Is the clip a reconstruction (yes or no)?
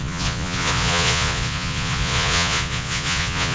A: yes